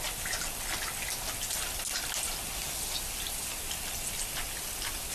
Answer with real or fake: real